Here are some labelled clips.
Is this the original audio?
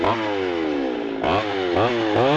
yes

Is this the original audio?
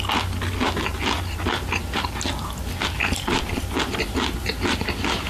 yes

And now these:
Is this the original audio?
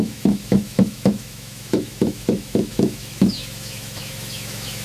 no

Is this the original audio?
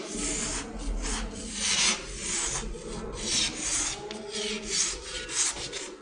yes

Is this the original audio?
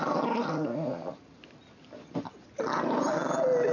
yes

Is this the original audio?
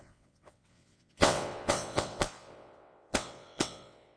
no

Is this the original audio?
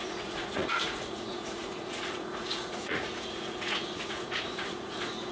no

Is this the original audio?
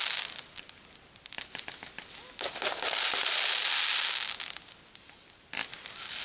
yes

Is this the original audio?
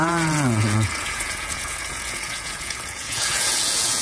no